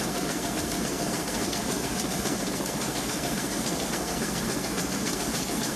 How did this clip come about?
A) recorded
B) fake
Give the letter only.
B